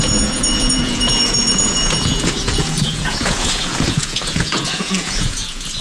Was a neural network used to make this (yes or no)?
yes